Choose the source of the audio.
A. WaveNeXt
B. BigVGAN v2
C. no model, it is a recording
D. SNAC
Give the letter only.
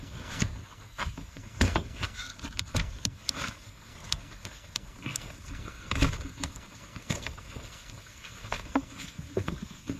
D